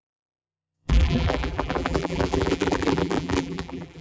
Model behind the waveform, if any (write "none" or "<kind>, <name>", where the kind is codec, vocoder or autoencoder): vocoder, BigVGAN v2